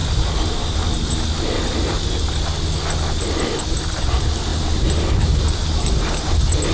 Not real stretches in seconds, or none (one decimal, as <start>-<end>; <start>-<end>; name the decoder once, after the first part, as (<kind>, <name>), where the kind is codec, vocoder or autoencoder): none